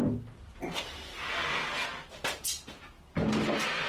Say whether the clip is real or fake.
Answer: real